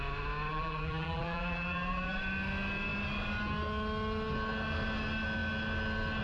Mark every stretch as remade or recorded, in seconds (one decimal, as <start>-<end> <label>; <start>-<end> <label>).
0.0-0.5 recorded; 0.5-2.2 remade; 2.2-6.2 recorded